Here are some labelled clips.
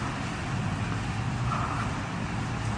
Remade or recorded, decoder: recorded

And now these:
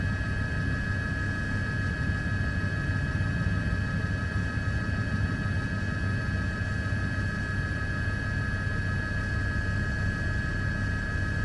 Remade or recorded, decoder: recorded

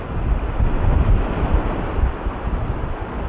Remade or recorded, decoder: recorded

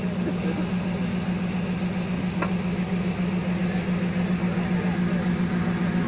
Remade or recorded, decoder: recorded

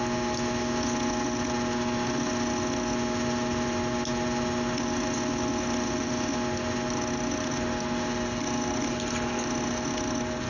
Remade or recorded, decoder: recorded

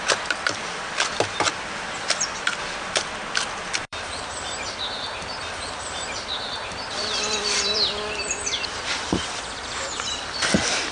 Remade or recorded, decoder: remade, vocoder, BigVGAN v2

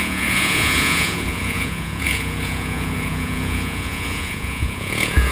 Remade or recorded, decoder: remade, vocoder, Vocos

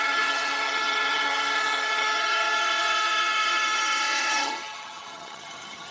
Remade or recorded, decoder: remade, vocoder, HiFi-GAN